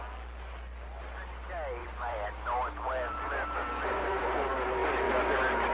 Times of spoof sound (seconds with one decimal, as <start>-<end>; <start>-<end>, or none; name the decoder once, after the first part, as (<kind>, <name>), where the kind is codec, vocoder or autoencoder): 1.8-4.2 (vocoder, BigVGAN v2); 4.8-5.7